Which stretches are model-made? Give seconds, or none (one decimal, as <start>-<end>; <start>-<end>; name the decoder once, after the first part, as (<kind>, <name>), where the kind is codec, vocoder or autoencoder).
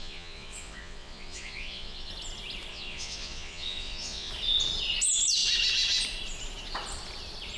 0.0-2.1 (vocoder, Vocos); 2.7-4.3